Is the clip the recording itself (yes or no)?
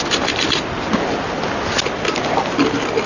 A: yes